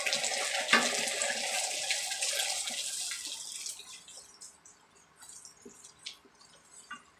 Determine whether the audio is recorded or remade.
recorded